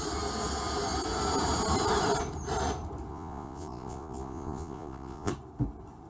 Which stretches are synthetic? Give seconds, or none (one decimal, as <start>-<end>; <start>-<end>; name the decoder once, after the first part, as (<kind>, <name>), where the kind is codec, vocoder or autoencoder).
3.1-5.3 (vocoder, Vocos)

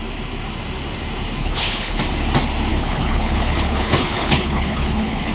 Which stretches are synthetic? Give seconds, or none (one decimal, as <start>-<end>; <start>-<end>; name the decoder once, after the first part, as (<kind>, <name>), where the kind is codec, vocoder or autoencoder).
1.4-2.0 (codec, HILCodec); 2.7-5.3

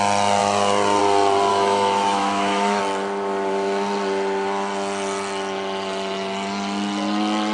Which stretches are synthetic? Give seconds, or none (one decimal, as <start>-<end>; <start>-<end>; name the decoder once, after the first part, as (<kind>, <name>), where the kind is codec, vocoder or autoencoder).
1.5-2.8 (autoencoder, DAC-VAE)

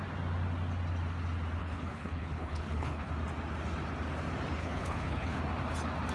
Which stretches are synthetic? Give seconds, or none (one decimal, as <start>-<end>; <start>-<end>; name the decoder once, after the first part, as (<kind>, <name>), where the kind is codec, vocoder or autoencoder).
1.6-3.1 (codec, HILCodec); 4.6-5.4

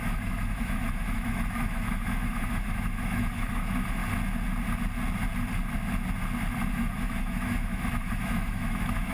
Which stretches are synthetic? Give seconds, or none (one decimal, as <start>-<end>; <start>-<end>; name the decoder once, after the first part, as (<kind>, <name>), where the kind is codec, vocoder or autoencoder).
0.0-4.0 (autoencoder, DAC-VAE); 6.7-9.1